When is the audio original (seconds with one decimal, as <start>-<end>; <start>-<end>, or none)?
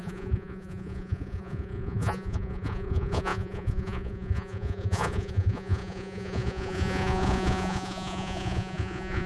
none